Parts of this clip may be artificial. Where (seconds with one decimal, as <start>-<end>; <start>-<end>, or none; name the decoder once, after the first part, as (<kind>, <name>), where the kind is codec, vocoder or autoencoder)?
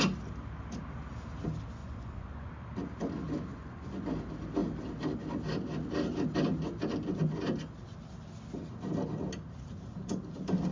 1.8-2.5 (vocoder, Vocos); 3.5-4.0